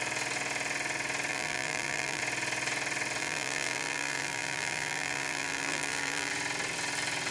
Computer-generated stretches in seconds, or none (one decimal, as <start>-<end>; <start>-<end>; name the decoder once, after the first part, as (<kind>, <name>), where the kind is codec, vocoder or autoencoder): 1.3-2.2 (vocoder, BigVGAN v2); 3.2-6.3